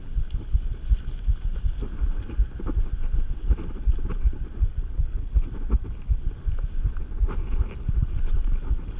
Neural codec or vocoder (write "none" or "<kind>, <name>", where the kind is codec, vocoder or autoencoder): none